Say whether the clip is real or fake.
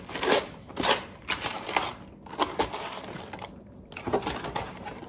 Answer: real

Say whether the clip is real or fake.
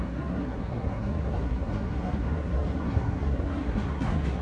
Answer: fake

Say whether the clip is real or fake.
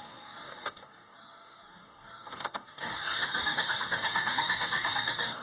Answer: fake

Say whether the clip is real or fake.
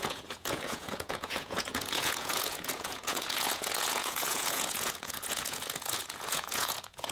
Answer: fake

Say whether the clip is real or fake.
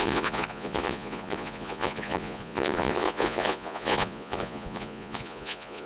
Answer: fake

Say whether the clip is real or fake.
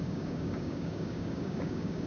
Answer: fake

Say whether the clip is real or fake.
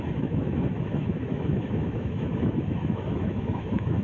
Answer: fake